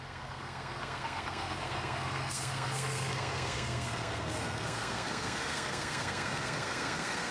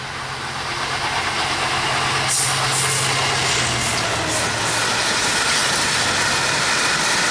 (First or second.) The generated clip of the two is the first